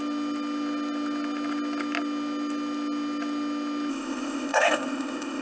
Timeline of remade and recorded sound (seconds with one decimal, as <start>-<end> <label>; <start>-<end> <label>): 0.0-3.9 recorded; 3.9-5.4 remade